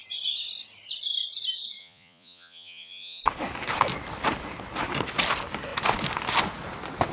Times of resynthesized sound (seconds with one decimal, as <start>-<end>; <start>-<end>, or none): 1.8-3.2